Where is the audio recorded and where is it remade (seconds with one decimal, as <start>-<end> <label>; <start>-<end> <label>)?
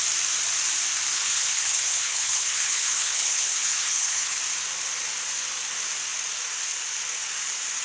0.0-1.1 recorded; 1.1-4.4 remade; 4.4-7.8 recorded